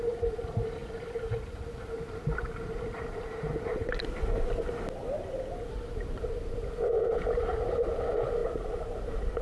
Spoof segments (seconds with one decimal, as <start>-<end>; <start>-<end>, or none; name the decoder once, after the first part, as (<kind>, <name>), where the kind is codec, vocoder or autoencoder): 0.0-3.8 (vocoder, BigVGAN v2); 5.7-8.4